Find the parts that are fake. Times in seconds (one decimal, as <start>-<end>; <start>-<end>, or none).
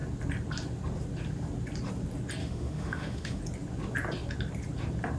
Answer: 2.4-3.4